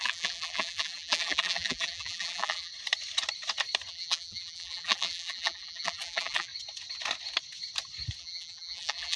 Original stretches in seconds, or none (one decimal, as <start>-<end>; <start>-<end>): 2.7-3.9; 6.5-8.2